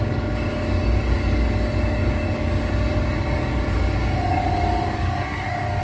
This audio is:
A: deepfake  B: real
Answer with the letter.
A